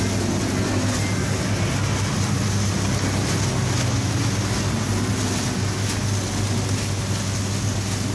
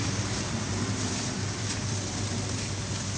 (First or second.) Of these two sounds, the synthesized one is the second